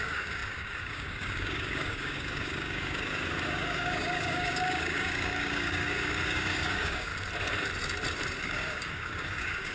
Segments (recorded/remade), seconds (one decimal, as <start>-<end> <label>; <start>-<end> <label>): 0.0-7.1 remade; 7.1-8.4 recorded; 8.4-9.7 remade